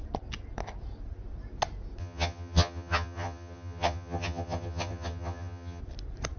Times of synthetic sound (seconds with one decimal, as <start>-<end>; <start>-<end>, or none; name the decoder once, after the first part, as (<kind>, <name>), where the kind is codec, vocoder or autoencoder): 2.0-5.8 (vocoder, HiFi-GAN)